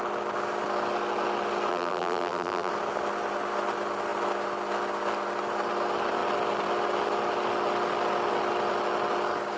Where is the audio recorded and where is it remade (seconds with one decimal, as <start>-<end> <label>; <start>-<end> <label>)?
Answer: 0.0-1.7 recorded; 1.7-2.7 remade; 2.7-9.6 recorded